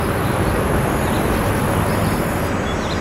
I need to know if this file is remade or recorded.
recorded